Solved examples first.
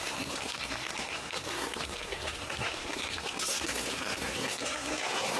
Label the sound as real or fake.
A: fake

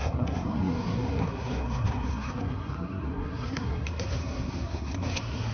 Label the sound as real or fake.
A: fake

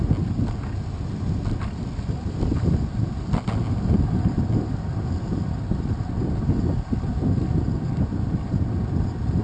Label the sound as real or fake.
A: real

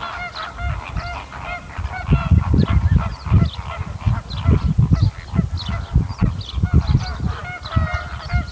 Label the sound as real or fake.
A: real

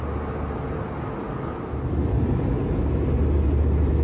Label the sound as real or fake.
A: real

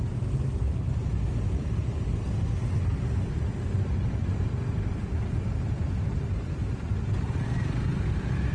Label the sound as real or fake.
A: real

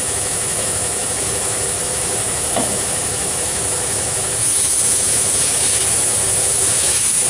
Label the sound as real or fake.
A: fake